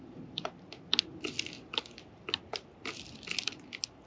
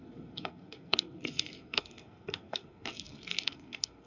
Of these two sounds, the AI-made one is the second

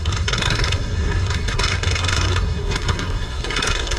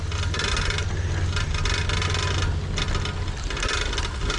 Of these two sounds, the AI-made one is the first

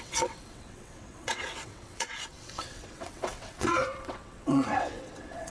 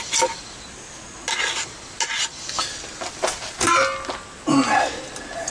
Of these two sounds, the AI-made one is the first